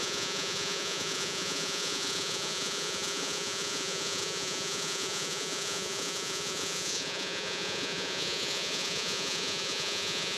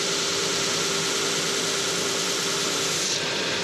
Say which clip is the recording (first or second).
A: second